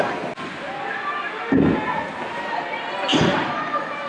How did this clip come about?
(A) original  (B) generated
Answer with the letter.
A